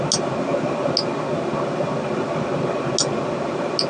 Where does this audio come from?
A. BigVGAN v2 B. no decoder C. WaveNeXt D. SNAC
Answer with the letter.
B